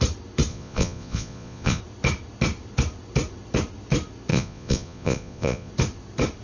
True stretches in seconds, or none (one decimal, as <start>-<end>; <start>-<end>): 0.0-0.5; 1.8-4.3; 5.7-6.4